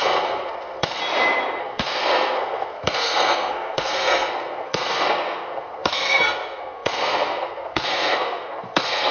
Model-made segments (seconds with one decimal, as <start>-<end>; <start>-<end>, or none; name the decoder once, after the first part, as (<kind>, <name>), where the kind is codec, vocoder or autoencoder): 0.0-1.0 (codec, SNAC); 1.6-9.1